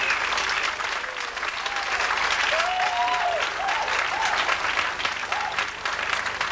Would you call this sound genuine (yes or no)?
yes